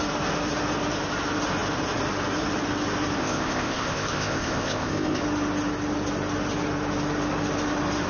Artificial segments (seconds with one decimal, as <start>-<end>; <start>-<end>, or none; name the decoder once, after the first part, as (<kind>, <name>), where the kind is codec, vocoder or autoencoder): 3.2-5.2 (codec, ZipCodec)